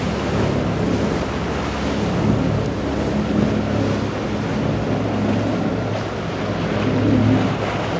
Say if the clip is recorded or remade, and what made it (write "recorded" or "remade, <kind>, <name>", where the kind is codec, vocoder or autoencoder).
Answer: recorded